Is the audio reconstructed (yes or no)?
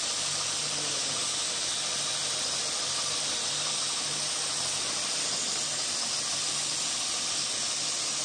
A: no